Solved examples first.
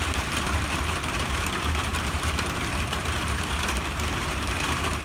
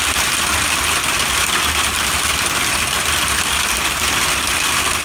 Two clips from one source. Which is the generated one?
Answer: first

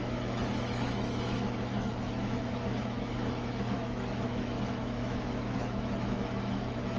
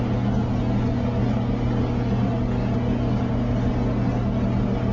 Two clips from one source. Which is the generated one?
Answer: first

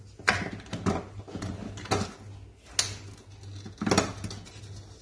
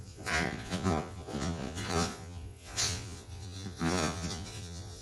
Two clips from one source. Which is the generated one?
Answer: second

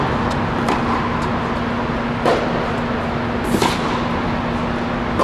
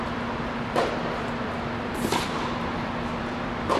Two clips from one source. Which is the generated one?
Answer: second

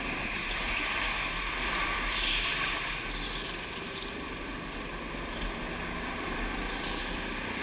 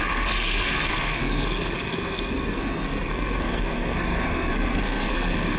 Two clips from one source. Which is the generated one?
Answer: second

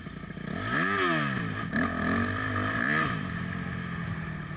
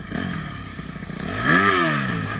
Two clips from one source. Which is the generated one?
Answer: second